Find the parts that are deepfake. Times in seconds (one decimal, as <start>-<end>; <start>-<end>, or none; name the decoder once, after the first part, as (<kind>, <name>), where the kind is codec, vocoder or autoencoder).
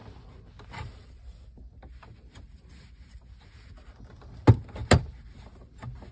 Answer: none